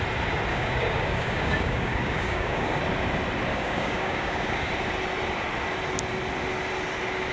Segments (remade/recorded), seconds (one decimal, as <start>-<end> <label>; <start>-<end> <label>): 0.0-0.5 recorded; 0.5-2.8 remade; 2.8-3.5 recorded; 3.5-4.7 remade; 4.7-7.3 recorded